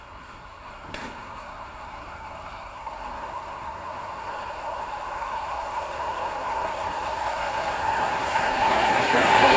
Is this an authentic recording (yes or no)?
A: no